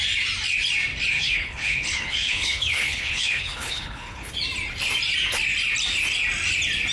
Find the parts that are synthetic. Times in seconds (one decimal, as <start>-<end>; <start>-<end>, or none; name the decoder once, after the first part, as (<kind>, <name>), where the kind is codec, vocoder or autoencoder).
1.1-4.3 (codec, HILCodec)

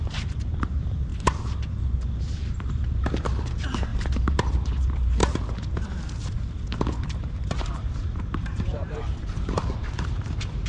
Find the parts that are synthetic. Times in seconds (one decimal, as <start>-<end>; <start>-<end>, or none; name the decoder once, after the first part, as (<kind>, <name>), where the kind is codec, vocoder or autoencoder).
0.0-1.1 (vocoder, BigVGAN v2); 1.8-5.2; 8.0-10.7

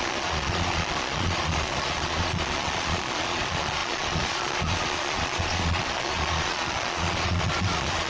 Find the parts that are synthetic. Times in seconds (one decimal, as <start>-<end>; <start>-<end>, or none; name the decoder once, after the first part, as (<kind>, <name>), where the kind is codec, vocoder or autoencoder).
0.0-8.1 (vocoder, Vocos)

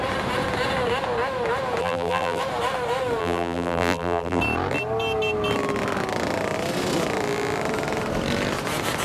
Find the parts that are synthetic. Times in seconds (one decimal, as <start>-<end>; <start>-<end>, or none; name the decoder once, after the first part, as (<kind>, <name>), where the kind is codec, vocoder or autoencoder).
1.8-2.4 (vocoder, BigVGAN v2); 3.2-4.4

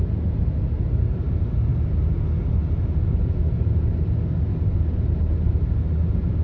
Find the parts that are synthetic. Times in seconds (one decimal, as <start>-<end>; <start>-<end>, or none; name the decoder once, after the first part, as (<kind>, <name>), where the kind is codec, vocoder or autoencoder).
none

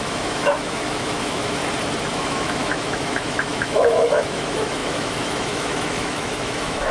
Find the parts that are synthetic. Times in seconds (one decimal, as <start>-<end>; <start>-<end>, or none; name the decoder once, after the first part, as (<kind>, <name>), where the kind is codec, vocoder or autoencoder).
0.0-1.6 (autoencoder, DAC-VAE); 2.1-6.9

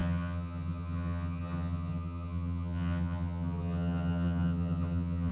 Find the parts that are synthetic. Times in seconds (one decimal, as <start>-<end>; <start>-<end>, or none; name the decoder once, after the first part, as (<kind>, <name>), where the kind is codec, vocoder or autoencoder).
0.0-5.3 (vocoder, HiFi-GAN)